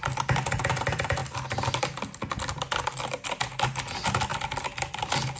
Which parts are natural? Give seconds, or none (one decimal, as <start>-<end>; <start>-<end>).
0.0-5.4